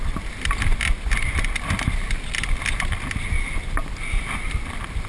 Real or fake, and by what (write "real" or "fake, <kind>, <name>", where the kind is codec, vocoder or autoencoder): real